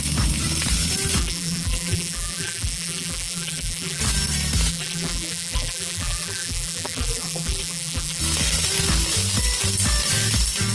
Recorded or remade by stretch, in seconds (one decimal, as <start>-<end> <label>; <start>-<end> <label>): 0.0-1.2 recorded; 1.2-4.0 remade; 4.0-4.7 recorded; 4.7-8.2 remade; 8.2-10.7 recorded

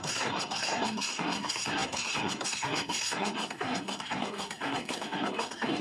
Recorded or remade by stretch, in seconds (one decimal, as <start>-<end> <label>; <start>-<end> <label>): 0.0-5.8 remade

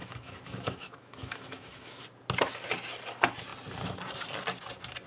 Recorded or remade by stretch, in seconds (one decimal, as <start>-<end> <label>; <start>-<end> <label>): 0.0-2.0 remade; 2.0-5.1 recorded

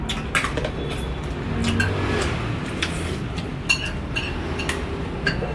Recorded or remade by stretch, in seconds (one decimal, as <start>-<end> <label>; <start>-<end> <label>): 0.0-5.5 recorded

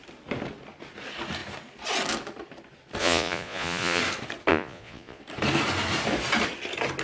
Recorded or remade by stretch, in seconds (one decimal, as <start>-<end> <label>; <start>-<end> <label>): 0.0-3.0 recorded; 3.0-4.0 remade; 4.0-4.5 recorded; 4.5-5.2 remade; 5.2-7.0 recorded

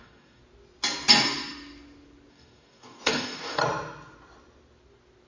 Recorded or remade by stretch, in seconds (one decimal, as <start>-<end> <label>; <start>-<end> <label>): 0.0-0.4 remade; 0.4-2.3 recorded; 2.3-3.6 remade; 3.6-5.3 recorded